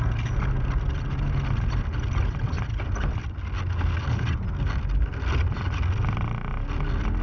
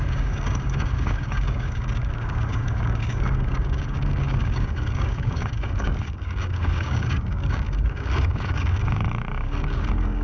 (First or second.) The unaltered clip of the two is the first